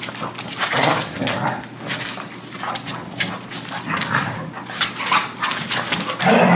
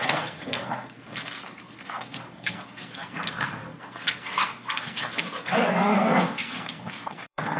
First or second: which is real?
first